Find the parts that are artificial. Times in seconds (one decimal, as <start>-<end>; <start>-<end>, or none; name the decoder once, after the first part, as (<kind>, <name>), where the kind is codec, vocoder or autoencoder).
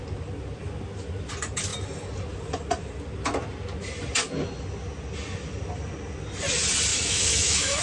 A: 6.9-7.8 (autoencoder, DAC-VAE)